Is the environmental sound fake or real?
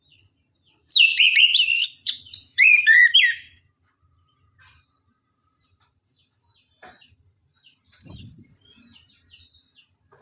fake